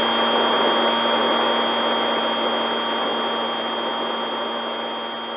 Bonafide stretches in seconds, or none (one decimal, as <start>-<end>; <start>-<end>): 0.0-5.4